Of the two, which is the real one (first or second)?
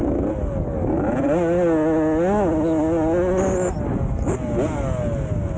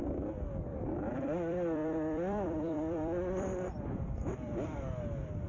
first